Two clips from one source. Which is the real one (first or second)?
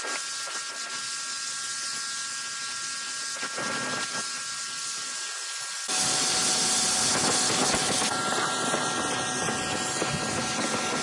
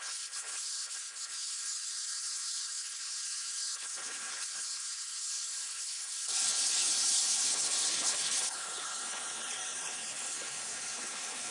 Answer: first